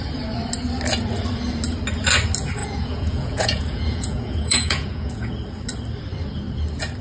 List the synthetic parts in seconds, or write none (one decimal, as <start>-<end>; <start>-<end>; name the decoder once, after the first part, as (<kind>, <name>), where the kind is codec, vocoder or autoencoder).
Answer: 2.6-5.3 (vocoder, Vocos)